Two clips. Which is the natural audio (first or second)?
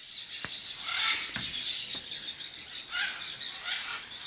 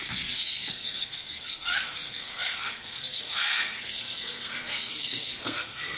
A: first